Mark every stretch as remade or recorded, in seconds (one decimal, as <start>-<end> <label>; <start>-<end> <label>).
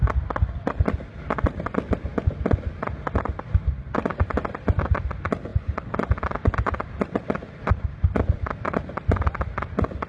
0.0-5.5 recorded; 5.5-9.1 remade; 9.1-10.1 recorded